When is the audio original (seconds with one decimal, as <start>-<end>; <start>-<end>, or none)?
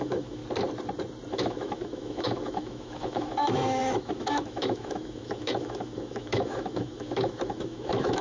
0.4-1.3